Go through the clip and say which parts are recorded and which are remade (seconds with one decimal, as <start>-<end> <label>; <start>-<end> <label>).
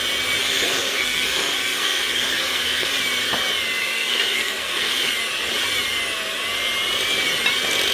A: 0.0-0.4 recorded; 0.4-2.9 remade; 2.9-3.8 recorded; 3.8-5.1 remade; 5.1-7.9 recorded